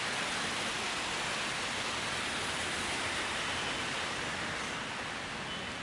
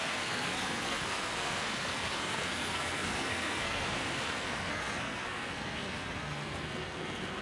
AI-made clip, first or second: second